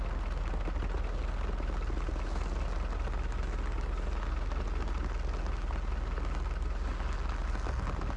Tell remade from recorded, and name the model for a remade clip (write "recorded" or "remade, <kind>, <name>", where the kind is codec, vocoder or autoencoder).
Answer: recorded